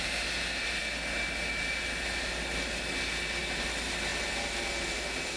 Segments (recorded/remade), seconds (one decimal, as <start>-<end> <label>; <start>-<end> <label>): 0.0-5.4 recorded